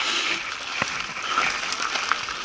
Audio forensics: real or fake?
real